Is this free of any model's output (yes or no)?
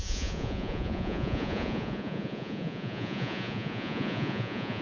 no